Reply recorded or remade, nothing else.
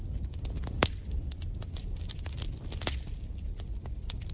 recorded